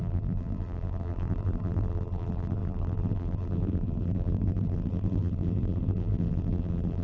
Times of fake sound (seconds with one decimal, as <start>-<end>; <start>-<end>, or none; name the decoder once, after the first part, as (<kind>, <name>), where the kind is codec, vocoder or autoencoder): 0.0-7.0 (vocoder, BigVGAN v2)

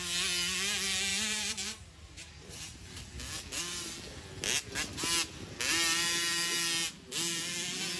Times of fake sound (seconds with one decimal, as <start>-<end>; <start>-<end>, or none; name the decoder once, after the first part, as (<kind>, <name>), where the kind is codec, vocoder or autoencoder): 1.1-3.0 (vocoder, BigVGAN v2)

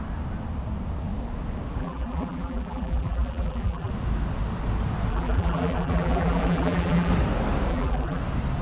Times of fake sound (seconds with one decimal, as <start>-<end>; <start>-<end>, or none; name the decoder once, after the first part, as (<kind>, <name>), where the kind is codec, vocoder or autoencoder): 1.8-3.9 (vocoder, BigVGAN v2); 5.1-7.1; 7.7-8.2

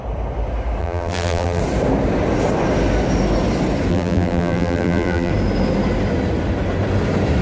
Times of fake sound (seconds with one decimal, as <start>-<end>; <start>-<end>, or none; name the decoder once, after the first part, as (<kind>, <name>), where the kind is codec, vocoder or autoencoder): 0.8-1.6 (vocoder, BigVGAN v2); 3.9-5.3

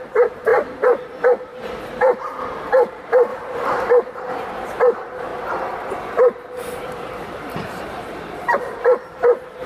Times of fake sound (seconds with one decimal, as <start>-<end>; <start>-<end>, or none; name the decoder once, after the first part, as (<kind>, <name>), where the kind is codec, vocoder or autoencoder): 0.0-5.3 (vocoder, BigVGAN v2); 6.1-9.7

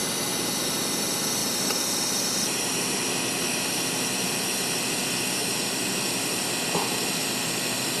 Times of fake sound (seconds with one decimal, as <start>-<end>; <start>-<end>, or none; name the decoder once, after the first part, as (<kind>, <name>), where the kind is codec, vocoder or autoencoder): 1.4-4.3 (vocoder, BigVGAN v2); 5.4-6.5